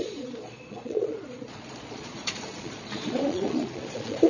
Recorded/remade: remade